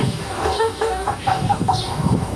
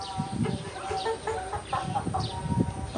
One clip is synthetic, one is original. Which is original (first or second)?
second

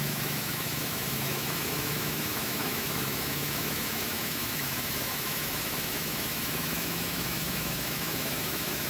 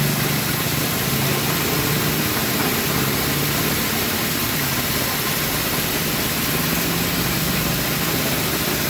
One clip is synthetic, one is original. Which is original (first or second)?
second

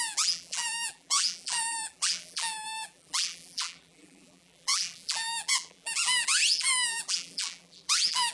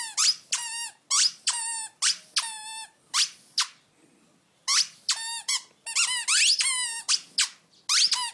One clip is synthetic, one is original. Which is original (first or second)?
second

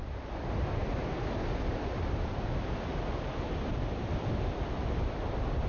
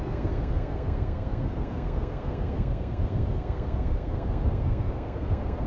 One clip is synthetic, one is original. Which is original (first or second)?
first